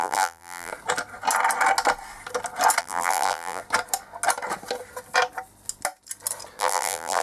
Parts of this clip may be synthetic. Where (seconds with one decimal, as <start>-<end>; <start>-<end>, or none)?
0.0-0.7; 2.8-3.6; 6.6-7.2